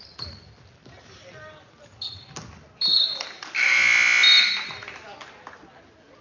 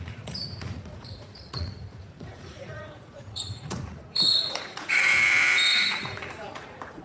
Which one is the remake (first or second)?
second